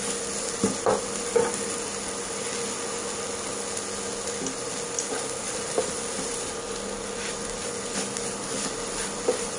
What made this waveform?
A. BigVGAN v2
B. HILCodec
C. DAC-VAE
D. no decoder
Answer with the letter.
D